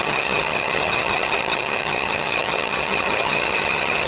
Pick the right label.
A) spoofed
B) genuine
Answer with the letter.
A